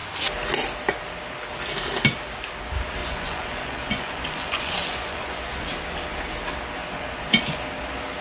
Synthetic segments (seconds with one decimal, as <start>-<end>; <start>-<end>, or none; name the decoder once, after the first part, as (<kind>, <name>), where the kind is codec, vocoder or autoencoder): 3.0-5.7 (vocoder, Vocos); 6.8-7.6